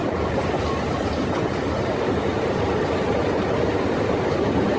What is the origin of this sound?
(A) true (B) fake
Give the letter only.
A